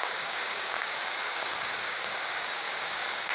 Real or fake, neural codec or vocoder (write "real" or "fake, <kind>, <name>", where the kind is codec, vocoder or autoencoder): fake, codec, DAC